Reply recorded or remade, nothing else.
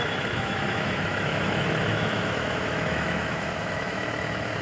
remade